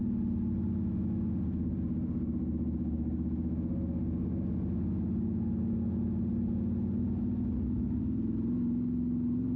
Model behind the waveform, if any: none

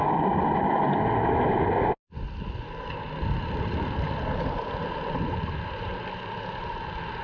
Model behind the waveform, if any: none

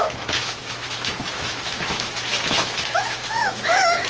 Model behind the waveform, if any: autoencoder, DAC-VAE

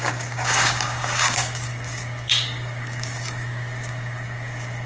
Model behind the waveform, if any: codec, DAC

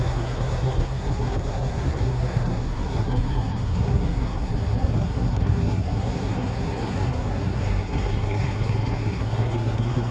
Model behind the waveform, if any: codec, SNAC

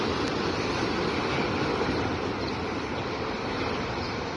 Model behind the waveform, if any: none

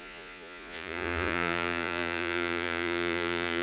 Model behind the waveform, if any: vocoder, Vocos